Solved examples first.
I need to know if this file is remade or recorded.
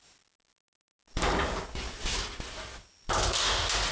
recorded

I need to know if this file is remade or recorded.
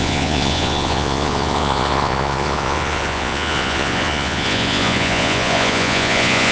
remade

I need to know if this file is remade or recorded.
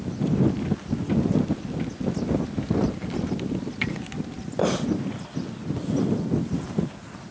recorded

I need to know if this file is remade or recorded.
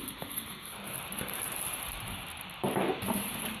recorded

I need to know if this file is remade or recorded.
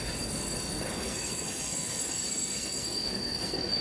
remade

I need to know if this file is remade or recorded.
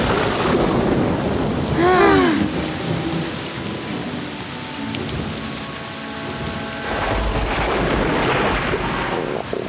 recorded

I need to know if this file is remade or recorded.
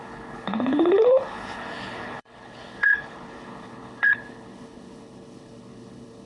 remade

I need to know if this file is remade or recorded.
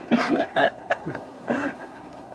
remade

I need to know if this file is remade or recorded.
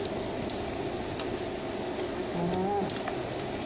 recorded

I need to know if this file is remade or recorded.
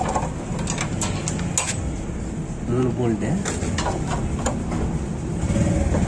recorded